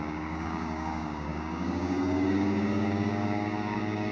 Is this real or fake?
fake